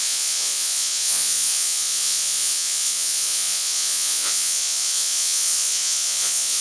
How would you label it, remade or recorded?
remade